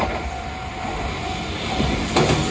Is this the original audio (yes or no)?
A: yes